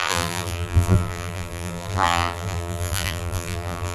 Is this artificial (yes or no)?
yes